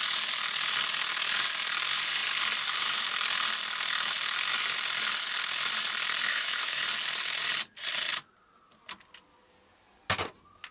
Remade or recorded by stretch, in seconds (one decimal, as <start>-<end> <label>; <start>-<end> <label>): 0.0-6.3 recorded; 6.3-6.8 remade; 6.8-10.7 recorded

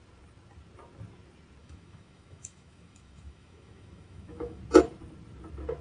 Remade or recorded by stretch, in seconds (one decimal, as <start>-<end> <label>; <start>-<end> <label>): 0.0-1.6 recorded; 1.6-4.6 remade; 4.6-5.8 recorded